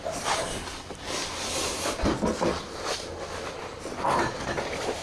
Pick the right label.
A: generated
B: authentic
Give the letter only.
B